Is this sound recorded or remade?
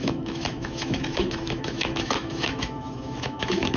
remade